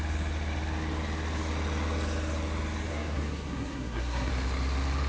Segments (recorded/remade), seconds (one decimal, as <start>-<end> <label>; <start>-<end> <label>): 0.0-2.9 recorded; 2.9-4.3 remade; 4.3-5.1 recorded